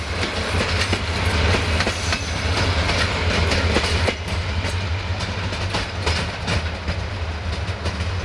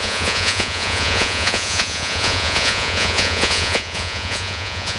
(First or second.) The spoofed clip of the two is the second